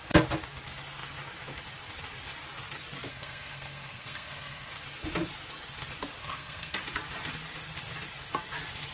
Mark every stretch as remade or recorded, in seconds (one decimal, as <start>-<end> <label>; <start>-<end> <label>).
0.0-3.1 recorded; 3.1-4.7 remade; 4.7-6.2 recorded; 6.2-6.8 remade; 6.8-8.9 recorded